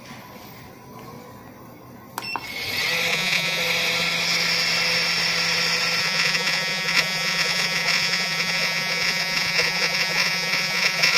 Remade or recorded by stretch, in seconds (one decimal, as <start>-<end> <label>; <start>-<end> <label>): 0.0-3.1 recorded; 3.1-3.6 remade; 3.6-6.0 recorded; 6.0-11.2 remade